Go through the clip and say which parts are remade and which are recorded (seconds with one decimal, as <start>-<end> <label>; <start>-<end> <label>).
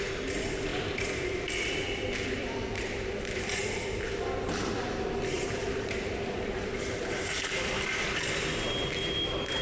0.0-2.4 recorded; 2.4-7.4 remade; 7.4-9.6 recorded